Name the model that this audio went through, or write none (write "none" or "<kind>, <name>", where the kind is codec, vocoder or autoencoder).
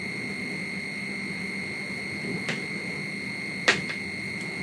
none